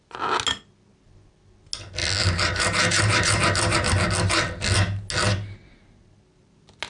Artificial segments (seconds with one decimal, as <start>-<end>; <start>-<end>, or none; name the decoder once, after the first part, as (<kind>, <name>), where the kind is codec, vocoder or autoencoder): 2.2-3.9 (vocoder, BigVGAN v2)

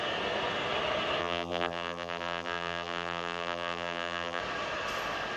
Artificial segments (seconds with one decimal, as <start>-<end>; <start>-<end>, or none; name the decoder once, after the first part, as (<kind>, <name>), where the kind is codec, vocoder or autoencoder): 1.2-4.4 (vocoder, BigVGAN v2)

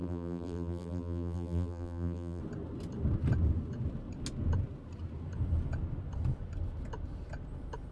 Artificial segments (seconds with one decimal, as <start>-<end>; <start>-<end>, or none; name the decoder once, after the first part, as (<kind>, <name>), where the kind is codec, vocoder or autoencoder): 0.0-2.4 (vocoder, BigVGAN v2)

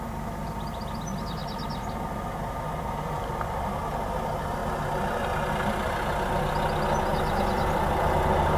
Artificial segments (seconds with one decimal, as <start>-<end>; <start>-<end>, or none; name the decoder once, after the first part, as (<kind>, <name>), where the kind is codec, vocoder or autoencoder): 7.1-8.2 (vocoder, BigVGAN v2)

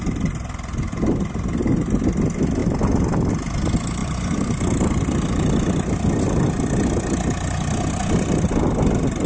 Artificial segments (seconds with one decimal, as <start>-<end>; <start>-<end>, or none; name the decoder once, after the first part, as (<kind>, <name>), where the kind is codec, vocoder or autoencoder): 2.6-3.3 (vocoder, BigVGAN v2); 4.0-5.3